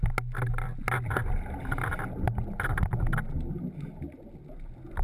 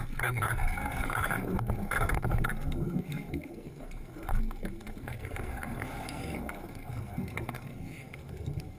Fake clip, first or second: second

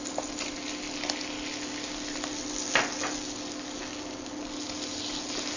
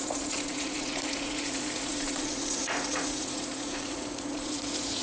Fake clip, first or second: second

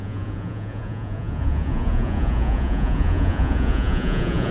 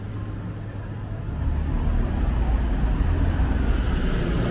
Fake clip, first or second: first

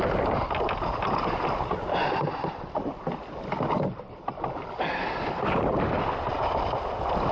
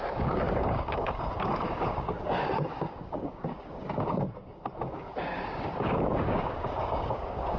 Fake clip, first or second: second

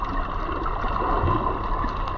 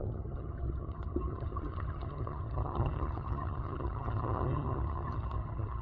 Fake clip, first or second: second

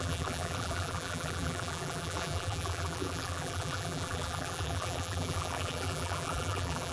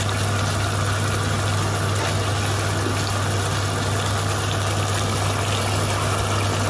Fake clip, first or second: first